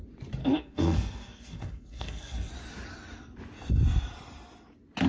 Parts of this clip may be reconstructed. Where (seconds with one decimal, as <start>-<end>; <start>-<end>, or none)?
0.4-2.5